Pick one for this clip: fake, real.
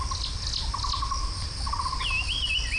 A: real